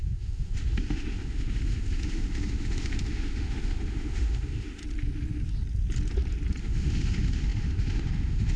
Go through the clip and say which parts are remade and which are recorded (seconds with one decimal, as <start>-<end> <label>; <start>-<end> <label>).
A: 0.0-4.8 remade; 4.8-6.6 recorded; 6.6-8.6 remade